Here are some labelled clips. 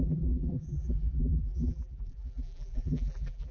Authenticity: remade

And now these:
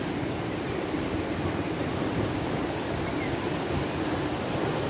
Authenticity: remade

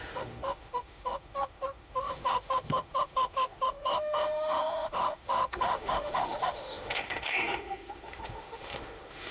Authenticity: remade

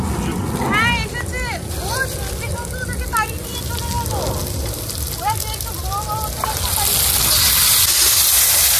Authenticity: recorded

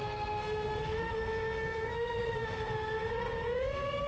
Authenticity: remade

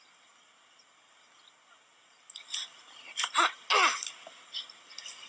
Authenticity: recorded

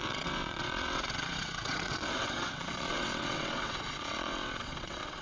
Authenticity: remade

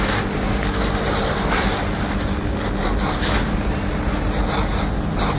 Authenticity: recorded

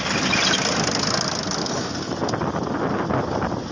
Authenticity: recorded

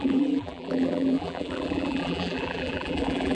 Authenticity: remade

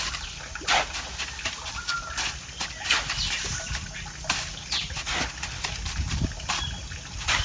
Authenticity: recorded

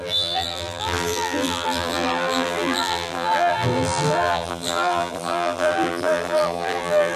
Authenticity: remade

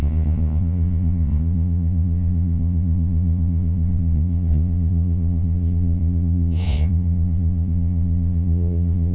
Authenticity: remade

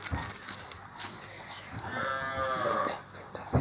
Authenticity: recorded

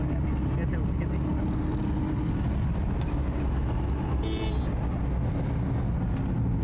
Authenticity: recorded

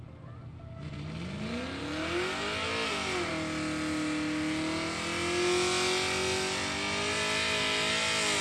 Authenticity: recorded